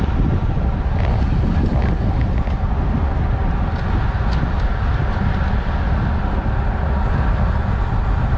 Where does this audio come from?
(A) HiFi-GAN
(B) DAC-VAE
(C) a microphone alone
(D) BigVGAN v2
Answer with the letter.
C